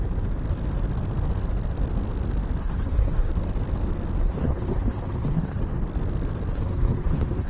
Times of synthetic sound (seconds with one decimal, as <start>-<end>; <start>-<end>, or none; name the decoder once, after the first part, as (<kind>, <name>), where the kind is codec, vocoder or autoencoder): 2.6-3.3 (codec, SNAC); 4.2-5.6; 6.5-7.5